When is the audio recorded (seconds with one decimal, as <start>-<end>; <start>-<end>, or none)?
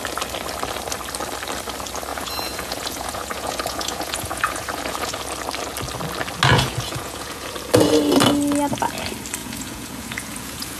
0.0-2.1; 5.2-6.5; 7.5-9.4